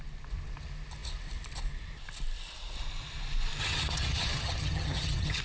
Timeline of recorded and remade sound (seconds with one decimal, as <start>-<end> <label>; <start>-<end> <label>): 0.0-3.6 recorded; 3.6-5.4 remade